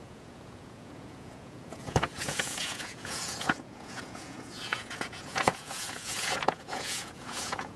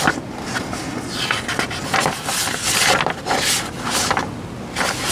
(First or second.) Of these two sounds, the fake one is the first